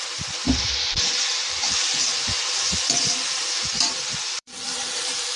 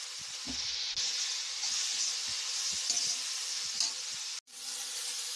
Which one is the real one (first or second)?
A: second